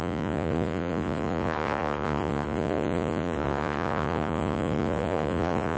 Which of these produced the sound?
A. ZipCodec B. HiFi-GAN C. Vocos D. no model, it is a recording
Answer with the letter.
C